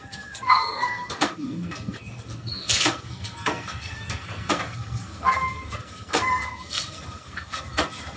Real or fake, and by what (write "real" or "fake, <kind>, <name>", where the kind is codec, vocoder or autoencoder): fake, codec, SNAC